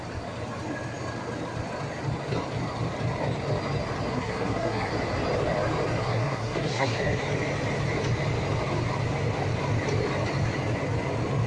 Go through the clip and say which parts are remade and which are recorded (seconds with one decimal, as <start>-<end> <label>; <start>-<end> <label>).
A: 0.0-4.1 recorded; 4.1-4.9 remade; 4.9-6.0 recorded; 6.0-7.2 remade; 7.2-11.5 recorded